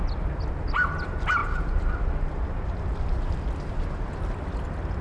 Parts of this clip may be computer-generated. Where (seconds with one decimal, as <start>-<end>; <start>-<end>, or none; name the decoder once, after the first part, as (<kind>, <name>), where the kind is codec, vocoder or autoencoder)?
none

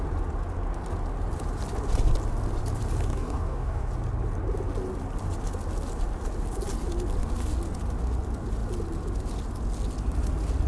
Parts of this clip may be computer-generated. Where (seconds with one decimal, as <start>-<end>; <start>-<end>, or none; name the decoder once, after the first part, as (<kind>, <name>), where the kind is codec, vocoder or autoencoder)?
3.1-3.9 (codec, DAC)

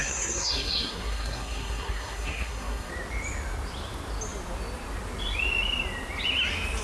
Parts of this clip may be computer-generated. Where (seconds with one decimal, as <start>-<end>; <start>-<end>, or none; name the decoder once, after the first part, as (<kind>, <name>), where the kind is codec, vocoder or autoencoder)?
0.0-2.9 (codec, SNAC)

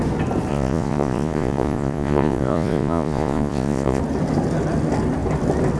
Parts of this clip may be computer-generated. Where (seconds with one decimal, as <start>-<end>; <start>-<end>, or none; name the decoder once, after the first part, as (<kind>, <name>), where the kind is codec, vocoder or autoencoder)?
0.5-4.0 (vocoder, Vocos)

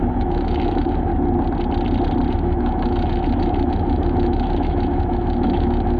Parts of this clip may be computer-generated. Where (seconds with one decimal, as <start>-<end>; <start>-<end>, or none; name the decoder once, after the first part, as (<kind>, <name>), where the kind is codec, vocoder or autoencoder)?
0.0-1.1 (autoencoder, DAC-VAE); 2.3-6.0

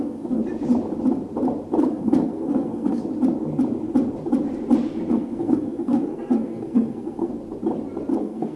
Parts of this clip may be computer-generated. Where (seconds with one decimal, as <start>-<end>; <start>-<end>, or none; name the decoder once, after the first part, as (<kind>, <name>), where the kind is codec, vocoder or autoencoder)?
0.0-0.4 (codec, SNAC); 1.8-3.0; 5.1-7.3; 8.2-8.6